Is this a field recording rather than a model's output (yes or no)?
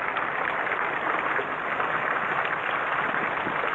yes